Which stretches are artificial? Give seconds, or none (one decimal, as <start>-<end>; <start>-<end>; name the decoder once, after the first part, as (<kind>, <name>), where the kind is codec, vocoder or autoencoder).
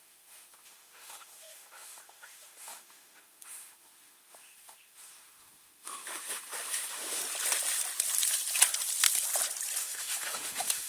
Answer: 0.0-7.2 (autoencoder, DAC-VAE); 9.8-10.9